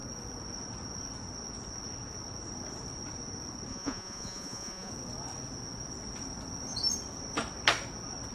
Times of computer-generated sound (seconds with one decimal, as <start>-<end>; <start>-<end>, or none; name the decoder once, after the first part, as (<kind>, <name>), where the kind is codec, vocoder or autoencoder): 3.7-4.9 (vocoder, Vocos)